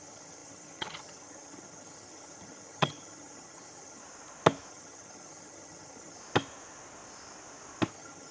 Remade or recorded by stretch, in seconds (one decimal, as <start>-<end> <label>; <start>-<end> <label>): 0.0-4.0 remade; 4.0-4.7 recorded; 4.7-6.2 remade; 6.2-7.9 recorded; 7.9-8.3 remade